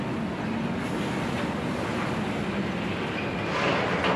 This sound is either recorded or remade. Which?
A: recorded